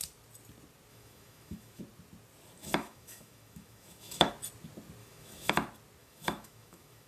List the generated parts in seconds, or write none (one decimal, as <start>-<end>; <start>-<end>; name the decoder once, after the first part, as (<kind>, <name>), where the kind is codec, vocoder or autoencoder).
0.9-1.8 (autoencoder, DAC-VAE); 2.6-4.3; 5.0-5.5; 6.0-7.1